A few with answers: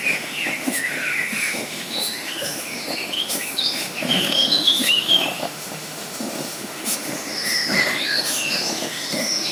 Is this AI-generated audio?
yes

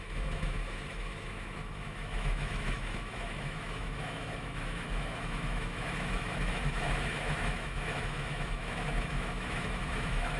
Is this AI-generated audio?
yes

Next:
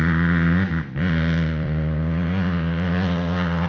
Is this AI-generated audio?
yes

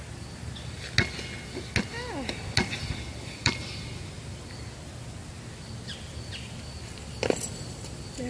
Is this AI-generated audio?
no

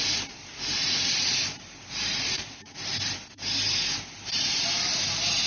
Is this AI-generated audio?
yes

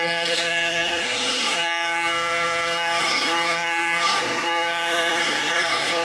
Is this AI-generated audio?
yes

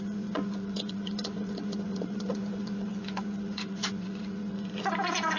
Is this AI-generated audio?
yes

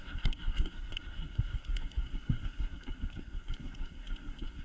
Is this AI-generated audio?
yes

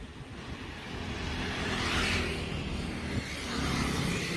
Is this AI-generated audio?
no